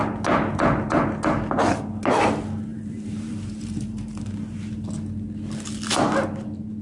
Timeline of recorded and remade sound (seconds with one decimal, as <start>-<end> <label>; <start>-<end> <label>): 0.0-2.7 recorded; 2.7-4.6 remade; 4.6-6.8 recorded